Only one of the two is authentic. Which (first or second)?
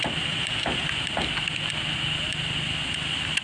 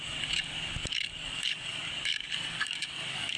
first